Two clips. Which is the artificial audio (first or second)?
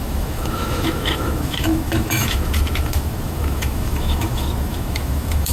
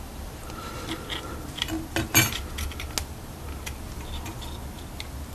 first